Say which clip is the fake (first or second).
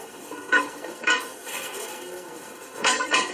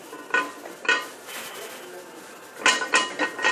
first